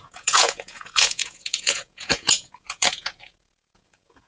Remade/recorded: remade